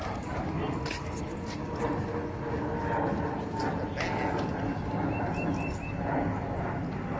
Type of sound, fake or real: real